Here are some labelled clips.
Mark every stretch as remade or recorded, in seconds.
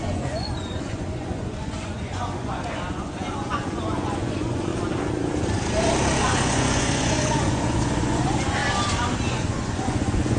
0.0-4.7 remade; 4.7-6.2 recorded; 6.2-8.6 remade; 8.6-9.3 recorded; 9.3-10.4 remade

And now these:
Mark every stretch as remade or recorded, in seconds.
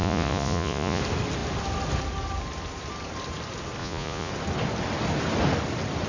0.0-1.0 remade; 1.0-3.8 recorded; 3.8-4.3 remade; 4.3-6.1 recorded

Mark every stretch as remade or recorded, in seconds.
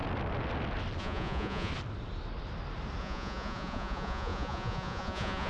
0.0-1.0 recorded; 1.0-1.7 remade; 1.7-3.0 recorded; 3.0-5.5 remade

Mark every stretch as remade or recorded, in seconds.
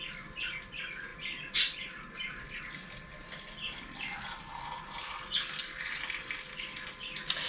0.0-7.5 recorded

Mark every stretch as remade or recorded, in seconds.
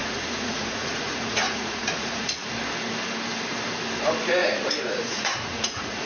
0.0-2.5 remade; 2.5-4.4 recorded; 4.4-6.1 remade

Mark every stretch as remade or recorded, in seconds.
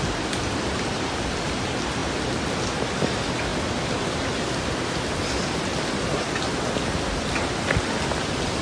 0.0-8.6 recorded